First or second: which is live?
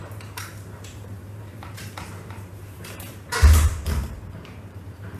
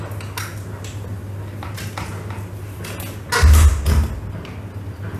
second